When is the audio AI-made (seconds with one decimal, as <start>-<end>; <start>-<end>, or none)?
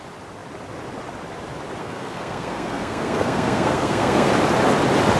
1.8-4.3